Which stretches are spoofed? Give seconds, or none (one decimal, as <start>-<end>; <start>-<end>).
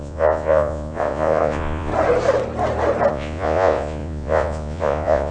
0.0-1.9; 3.1-5.3